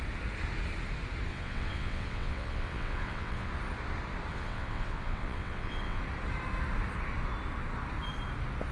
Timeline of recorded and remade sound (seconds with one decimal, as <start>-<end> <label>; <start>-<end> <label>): 0.0-1.3 recorded; 1.3-3.5 remade; 3.5-4.3 recorded; 4.3-6.0 remade; 6.0-8.7 recorded